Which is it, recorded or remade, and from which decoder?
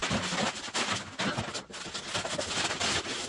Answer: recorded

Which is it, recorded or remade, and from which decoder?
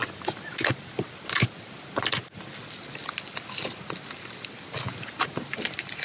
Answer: recorded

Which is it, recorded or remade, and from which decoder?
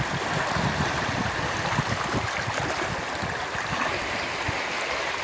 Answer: recorded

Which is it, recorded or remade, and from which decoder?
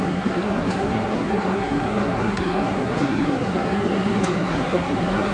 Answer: remade, codec, SNAC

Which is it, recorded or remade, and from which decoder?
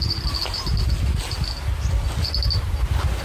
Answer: recorded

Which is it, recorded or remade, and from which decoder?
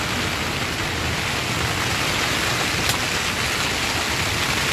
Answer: recorded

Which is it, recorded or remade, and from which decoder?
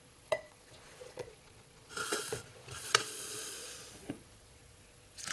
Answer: remade, vocoder, Vocos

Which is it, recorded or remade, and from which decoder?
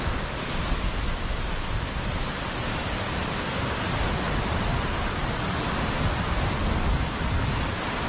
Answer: recorded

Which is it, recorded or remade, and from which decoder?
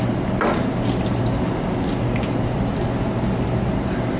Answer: recorded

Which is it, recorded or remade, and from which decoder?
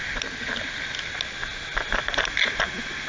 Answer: recorded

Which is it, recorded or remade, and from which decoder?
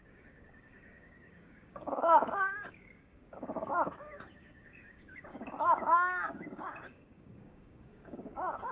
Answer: remade, codec, DAC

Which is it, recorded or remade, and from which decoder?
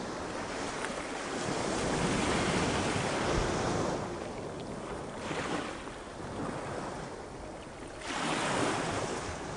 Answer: recorded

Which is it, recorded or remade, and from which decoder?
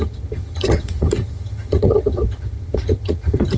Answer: remade, vocoder, HiFi-GAN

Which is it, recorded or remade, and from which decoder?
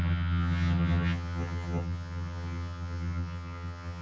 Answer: remade, vocoder, HiFi-GAN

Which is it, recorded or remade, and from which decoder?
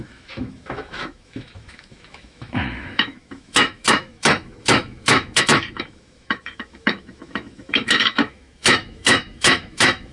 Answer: remade, autoencoder, DAC-VAE